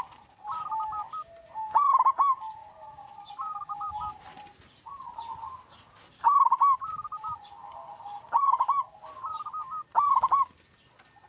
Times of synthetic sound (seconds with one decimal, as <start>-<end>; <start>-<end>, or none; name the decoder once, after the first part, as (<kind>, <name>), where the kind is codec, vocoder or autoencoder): 2.6-4.2 (codec, DAC)